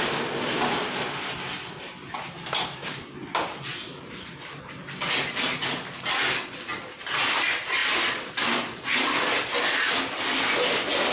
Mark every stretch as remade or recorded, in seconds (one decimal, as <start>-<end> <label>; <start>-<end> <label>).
0.0-11.1 recorded